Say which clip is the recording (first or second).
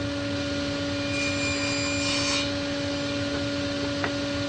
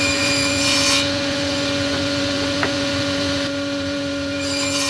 first